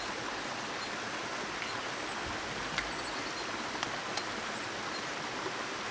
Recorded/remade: recorded